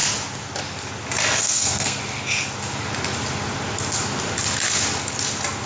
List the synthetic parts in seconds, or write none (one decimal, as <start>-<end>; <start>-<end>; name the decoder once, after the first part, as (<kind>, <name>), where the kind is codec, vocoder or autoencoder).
1.4-2.0 (codec, SNAC)